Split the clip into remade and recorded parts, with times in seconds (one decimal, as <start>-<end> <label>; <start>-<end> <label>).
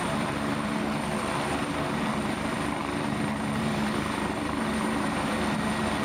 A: 0.0-6.0 remade